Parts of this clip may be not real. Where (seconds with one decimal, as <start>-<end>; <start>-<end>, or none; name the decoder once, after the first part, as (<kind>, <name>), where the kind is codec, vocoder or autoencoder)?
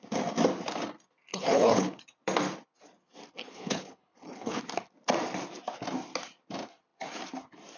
1.3-2.0 (codec, HILCodec); 3.4-4.6